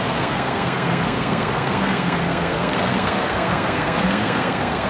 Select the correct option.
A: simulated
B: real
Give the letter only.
A